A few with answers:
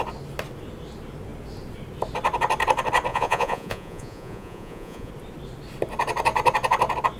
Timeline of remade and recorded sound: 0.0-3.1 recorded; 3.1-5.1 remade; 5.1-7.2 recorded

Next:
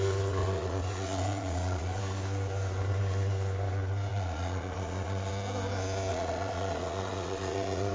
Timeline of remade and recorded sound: 0.0-0.4 recorded; 0.4-2.0 remade; 2.0-4.1 recorded; 4.1-5.3 remade; 5.3-6.1 recorded; 6.1-7.9 remade

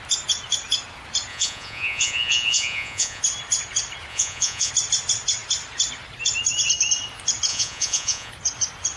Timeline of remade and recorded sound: 0.0-1.3 recorded; 1.3-3.2 remade; 3.2-4.1 recorded; 4.1-4.7 remade; 4.7-7.5 recorded; 7.5-8.3 remade; 8.3-9.0 recorded

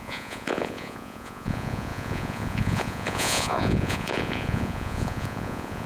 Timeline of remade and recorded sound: 0.0-5.9 remade

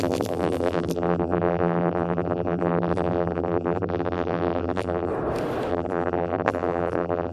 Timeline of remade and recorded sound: 0.0-5.1 remade; 5.1-5.7 recorded; 5.7-7.3 remade

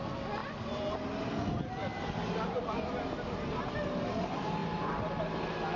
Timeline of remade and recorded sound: 0.0-5.8 recorded

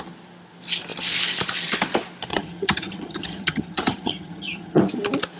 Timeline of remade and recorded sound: 0.0-2.3 recorded; 2.3-4.8 remade; 4.8-5.4 recorded

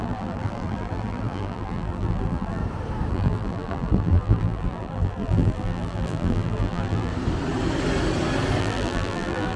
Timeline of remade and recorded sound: 0.0-2.6 remade; 2.6-3.1 recorded; 3.1-7.1 remade; 7.1-8.6 recorded; 8.6-9.6 remade